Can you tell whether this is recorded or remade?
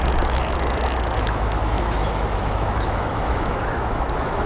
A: remade